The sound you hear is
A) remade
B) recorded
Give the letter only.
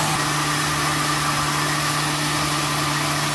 B